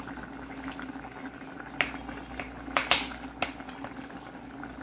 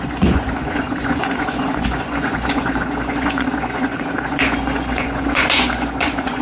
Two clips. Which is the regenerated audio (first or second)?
second